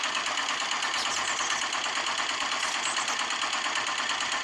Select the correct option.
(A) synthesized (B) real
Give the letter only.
B